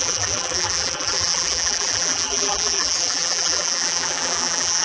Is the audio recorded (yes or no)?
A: no